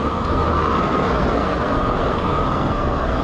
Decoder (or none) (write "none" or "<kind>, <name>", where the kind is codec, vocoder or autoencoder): codec, SNAC